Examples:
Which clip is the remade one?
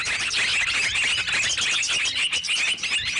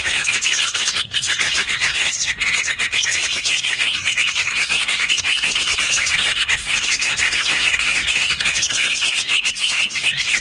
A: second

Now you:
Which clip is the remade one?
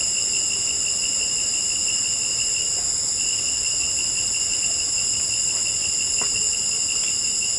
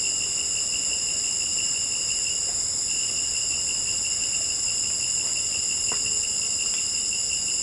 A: second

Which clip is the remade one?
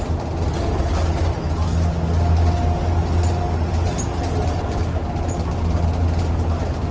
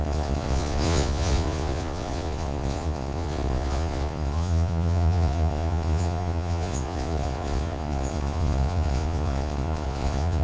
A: second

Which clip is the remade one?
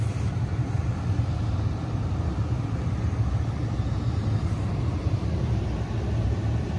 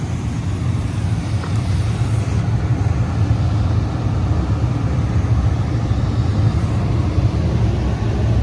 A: first